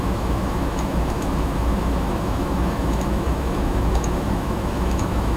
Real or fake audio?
fake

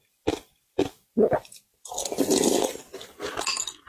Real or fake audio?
real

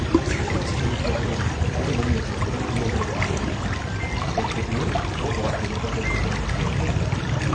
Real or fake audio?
real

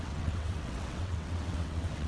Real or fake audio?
fake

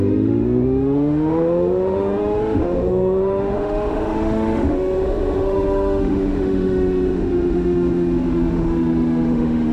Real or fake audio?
fake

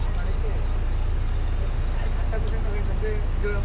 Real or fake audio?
real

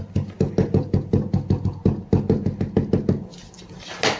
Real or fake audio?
real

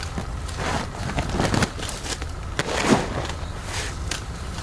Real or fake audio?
real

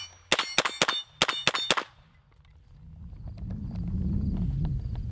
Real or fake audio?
real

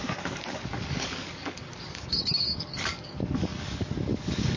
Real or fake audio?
fake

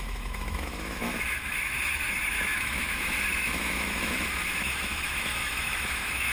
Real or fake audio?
fake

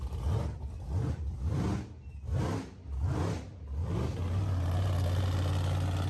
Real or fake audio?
real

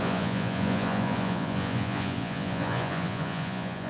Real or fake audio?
fake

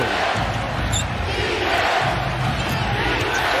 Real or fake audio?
real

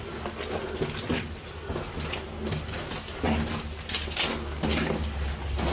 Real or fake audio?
real